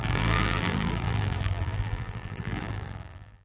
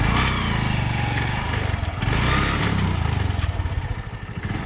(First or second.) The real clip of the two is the second